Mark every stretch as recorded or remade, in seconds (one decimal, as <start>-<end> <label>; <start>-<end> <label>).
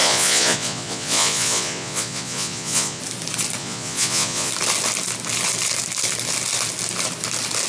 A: 0.0-3.0 remade; 3.0-3.6 recorded; 3.6-4.5 remade; 4.5-7.7 recorded